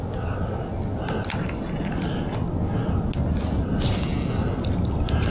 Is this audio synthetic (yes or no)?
no